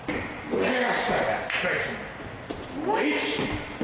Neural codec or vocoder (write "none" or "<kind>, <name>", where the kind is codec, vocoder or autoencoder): none